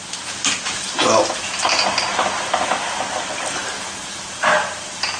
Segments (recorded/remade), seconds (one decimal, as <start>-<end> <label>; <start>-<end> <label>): 0.0-5.2 recorded